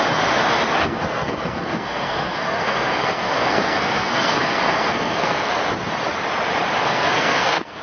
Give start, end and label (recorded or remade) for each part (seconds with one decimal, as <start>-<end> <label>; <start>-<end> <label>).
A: 0.0-0.8 recorded; 0.8-5.5 remade; 5.5-6.8 recorded; 6.8-7.8 remade